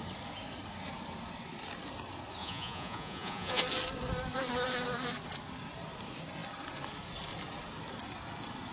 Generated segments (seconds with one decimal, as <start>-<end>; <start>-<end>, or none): 2.4-3.6